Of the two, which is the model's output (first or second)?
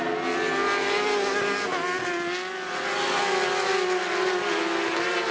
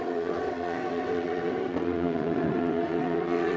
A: second